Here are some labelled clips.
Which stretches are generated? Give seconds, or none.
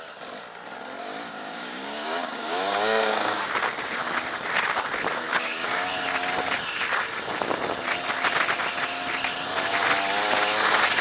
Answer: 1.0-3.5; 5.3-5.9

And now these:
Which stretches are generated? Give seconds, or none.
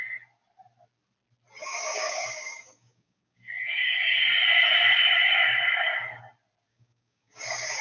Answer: 1.6-4.2; 6.7-7.8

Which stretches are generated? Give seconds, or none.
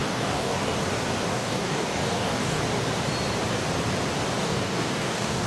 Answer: 0.0-0.7; 1.3-2.6; 4.4-5.5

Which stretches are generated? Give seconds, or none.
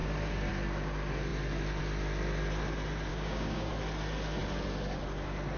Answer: 3.1-3.7